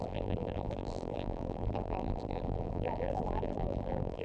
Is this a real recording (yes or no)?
no